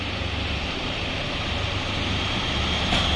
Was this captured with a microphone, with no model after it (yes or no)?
yes